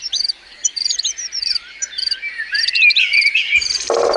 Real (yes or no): no